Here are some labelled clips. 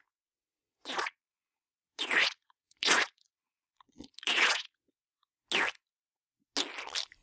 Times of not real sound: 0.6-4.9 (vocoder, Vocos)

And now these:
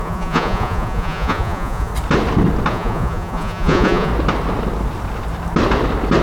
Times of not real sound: 0.0-1.9 (vocoder, Vocos); 2.7-4.1

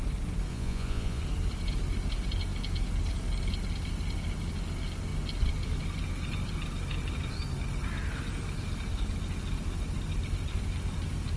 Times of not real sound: 0.5-1.2 (vocoder, Vocos)

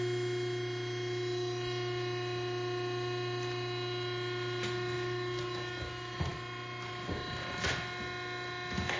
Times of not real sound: none

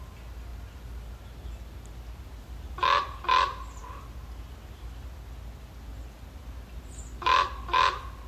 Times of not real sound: none

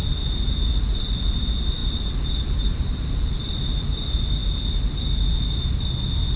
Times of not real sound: none

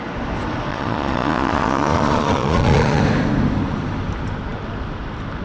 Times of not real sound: 0.7-3.0 (vocoder, Vocos)

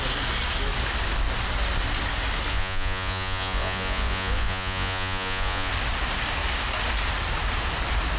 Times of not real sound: 2.5-5.7 (vocoder, Vocos)